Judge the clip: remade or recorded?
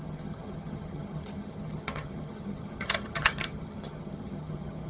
remade